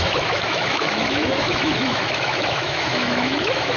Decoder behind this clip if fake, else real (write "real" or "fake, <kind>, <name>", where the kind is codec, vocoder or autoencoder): fake, autoencoder, DAC-VAE